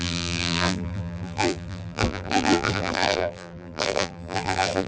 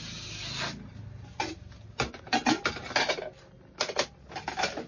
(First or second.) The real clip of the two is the second